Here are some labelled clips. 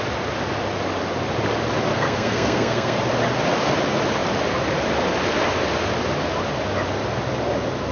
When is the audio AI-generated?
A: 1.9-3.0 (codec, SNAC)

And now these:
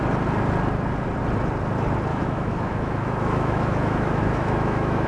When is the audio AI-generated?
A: 2.1-5.1 (autoencoder, DAC-VAE)

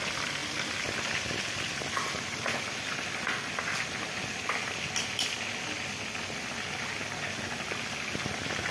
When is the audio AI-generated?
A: none

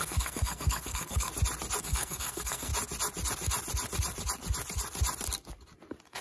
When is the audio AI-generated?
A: 0.0-1.3 (codec, SNAC); 1.8-2.7